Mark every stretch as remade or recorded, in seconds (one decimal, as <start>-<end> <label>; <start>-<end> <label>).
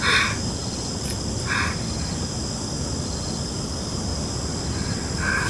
0.0-5.5 recorded